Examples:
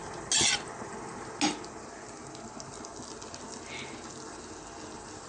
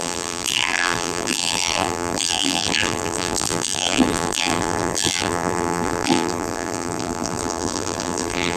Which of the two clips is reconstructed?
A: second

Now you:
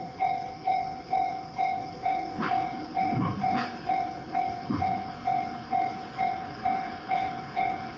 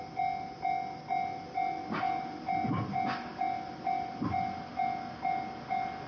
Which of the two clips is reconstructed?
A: first